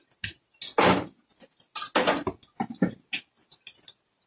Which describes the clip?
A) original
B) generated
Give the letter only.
A